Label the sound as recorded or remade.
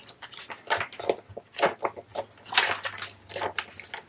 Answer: recorded